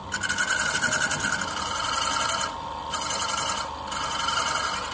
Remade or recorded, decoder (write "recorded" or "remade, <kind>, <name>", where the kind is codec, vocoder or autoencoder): recorded